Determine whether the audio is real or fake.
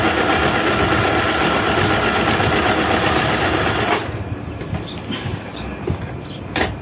real